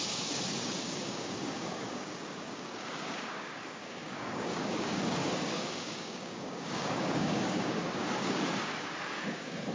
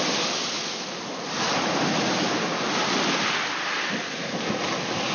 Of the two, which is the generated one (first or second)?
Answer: first